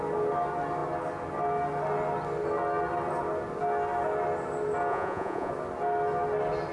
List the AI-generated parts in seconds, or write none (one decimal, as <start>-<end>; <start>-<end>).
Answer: 4.9-5.5